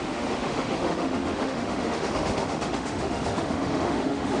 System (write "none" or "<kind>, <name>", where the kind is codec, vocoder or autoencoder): autoencoder, DAC-VAE